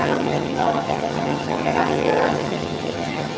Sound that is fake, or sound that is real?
fake